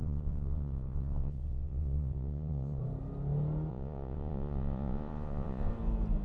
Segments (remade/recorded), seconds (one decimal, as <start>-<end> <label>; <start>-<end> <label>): 0.0-2.8 remade; 2.8-3.7 recorded; 3.7-5.7 remade; 5.7-6.2 recorded